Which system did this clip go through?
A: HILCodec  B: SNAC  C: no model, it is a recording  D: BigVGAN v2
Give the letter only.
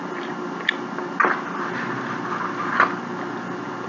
C